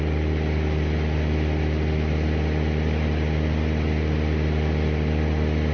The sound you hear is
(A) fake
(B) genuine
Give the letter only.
B